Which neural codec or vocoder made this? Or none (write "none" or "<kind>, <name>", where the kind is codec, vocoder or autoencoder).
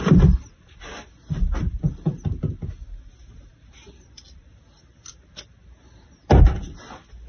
none